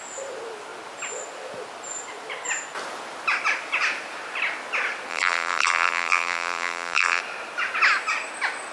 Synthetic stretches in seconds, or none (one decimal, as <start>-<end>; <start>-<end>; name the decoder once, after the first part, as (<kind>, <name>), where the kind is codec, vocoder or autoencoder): 5.1-7.2 (vocoder, BigVGAN v2)